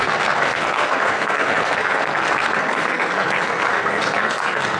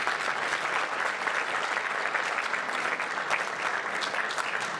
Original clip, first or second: second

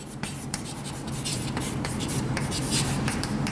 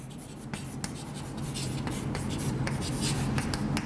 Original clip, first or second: second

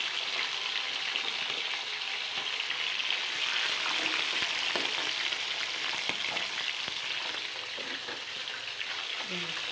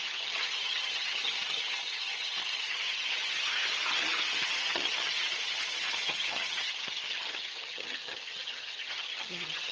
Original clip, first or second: first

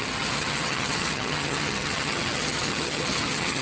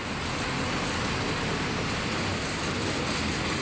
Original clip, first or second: second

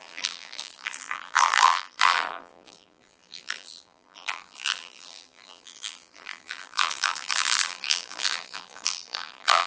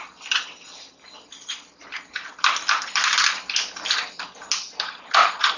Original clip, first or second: second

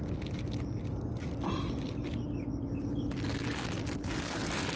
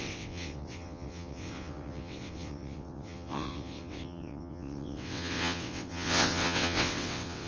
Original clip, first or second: first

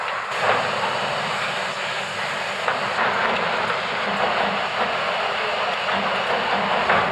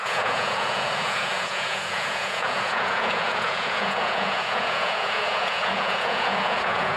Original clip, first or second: first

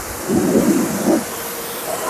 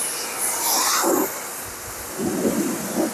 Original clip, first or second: second